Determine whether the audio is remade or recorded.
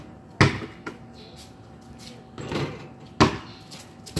recorded